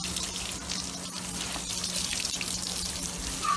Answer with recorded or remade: recorded